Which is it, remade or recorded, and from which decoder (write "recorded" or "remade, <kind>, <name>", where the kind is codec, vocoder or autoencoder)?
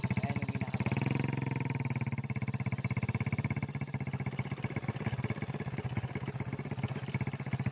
recorded